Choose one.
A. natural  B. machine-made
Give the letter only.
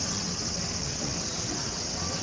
B